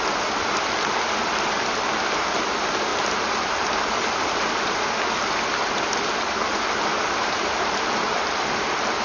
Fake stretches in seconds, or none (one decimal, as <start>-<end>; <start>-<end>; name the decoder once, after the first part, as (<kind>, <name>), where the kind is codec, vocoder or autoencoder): 2.9-4.9 (vocoder, BigVGAN v2); 7.2-9.0

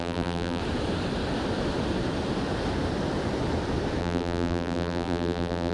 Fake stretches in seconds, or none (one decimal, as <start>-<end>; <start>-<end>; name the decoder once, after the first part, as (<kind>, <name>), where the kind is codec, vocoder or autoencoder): 0.0-0.6 (vocoder, BigVGAN v2); 4.0-5.7

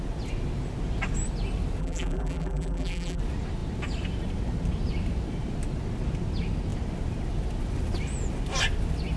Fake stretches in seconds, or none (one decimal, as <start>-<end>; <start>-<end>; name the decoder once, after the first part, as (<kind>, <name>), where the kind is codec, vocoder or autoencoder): 1.8-3.2 (vocoder, BigVGAN v2)

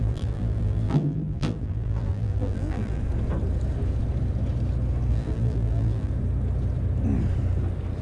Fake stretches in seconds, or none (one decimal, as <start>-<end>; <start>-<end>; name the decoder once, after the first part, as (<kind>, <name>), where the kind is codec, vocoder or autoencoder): 0.0-3.0 (vocoder, BigVGAN v2); 5.1-6.1

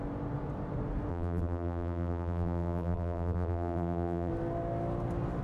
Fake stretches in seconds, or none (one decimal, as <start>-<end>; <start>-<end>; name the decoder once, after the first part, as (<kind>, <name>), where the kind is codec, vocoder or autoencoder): 1.1-4.3 (vocoder, BigVGAN v2)

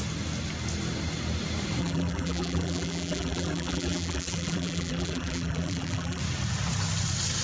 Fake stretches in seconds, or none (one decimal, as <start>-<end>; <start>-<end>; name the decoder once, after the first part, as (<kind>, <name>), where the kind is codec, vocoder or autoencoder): 1.8-6.2 (vocoder, BigVGAN v2)

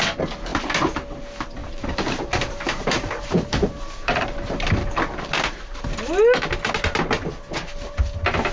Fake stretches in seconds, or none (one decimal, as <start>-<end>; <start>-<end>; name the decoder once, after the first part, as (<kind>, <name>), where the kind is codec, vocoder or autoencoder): 1.6-5.8 (vocoder, BigVGAN v2)